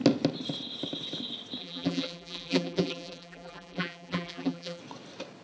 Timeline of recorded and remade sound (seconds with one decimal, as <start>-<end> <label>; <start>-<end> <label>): 0.0-1.6 recorded; 1.6-4.8 remade; 4.8-5.4 recorded